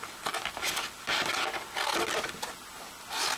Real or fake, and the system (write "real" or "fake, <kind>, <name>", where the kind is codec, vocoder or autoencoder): real